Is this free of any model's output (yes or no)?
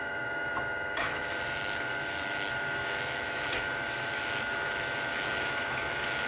no